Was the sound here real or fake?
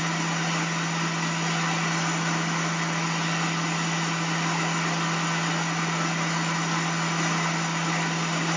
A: real